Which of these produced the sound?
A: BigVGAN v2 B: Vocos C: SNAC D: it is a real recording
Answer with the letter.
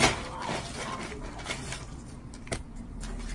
D